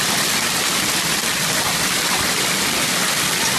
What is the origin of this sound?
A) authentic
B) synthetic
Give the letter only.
A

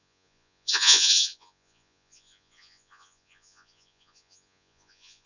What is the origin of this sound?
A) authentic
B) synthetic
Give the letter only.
B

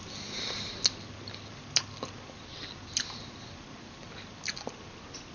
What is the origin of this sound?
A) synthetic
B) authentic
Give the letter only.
B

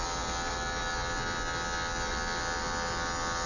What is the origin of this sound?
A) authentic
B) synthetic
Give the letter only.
A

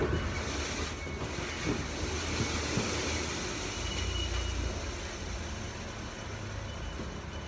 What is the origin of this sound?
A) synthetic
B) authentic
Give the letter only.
B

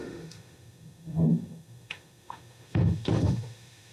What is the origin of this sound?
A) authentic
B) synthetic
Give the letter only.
B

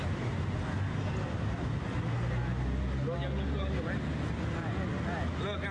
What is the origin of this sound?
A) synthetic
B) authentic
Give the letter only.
B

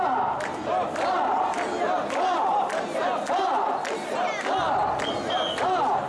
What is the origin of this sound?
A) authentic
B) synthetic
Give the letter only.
A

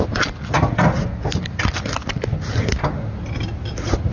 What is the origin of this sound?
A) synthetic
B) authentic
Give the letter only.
B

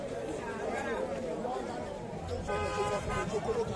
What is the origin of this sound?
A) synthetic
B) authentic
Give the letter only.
A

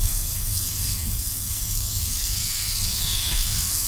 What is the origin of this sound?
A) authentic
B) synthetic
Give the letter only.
B